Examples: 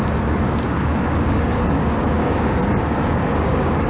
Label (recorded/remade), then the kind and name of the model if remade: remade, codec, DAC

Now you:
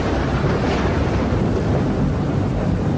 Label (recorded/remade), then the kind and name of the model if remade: recorded